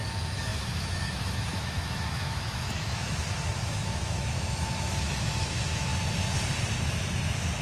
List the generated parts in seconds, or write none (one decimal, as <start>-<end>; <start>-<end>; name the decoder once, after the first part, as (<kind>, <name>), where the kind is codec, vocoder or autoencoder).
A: 0.0-5.9 (autoencoder, DAC-VAE)